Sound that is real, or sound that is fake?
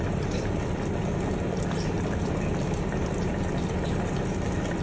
fake